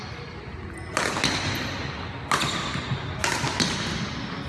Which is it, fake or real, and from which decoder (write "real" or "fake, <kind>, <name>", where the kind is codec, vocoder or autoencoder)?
real